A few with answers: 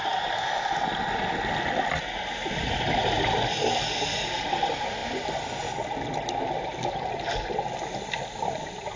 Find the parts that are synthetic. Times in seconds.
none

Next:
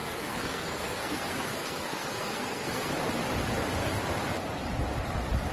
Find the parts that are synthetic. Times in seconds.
0.0-2.9 (codec, SNAC)

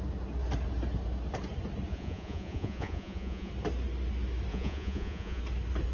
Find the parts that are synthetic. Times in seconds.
1.9-3.5 (vocoder, Vocos); 4.5-5.4